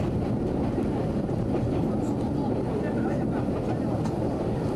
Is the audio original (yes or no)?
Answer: yes